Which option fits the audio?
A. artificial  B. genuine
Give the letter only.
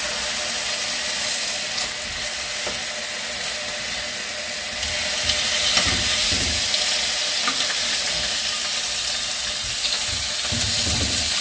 B